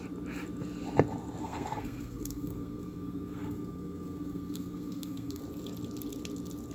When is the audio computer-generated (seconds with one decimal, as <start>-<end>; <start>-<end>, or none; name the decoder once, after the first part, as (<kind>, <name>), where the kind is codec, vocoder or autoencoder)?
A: 1.4-5.4 (codec, SNAC)